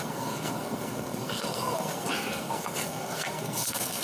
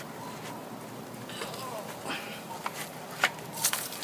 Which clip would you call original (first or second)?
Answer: second